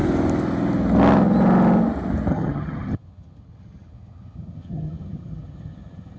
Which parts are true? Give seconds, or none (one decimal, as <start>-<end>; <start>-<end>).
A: 0.0-2.3